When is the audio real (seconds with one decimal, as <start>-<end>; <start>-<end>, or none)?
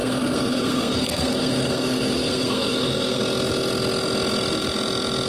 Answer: 3.2-5.3